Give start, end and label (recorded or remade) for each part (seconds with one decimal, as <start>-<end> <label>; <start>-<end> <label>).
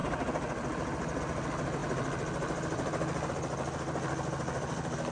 0.0-5.1 recorded